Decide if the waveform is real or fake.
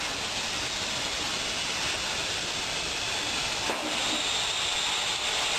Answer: real